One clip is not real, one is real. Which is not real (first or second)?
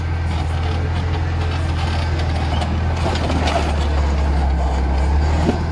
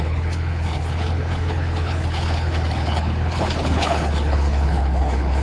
second